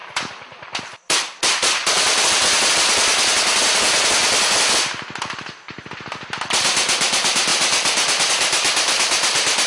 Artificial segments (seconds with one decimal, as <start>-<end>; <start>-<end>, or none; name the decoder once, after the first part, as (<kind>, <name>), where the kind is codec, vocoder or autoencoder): 0.0-2.7 (vocoder, BigVGAN v2); 7.5-8.3